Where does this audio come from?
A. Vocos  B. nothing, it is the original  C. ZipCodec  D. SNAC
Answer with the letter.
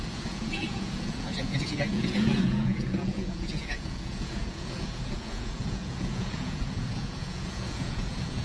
A